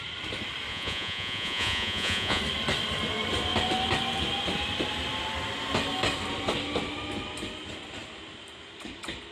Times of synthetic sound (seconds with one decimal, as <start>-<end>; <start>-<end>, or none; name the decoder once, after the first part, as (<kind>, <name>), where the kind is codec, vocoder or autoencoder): 0.7-2.4 (vocoder, Vocos)